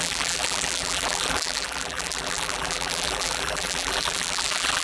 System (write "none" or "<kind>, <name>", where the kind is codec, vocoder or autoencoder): vocoder, BigVGAN v2